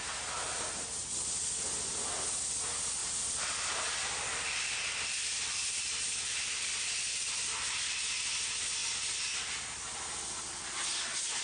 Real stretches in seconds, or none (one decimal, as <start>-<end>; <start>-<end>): 0.0-3.0; 7.8-11.4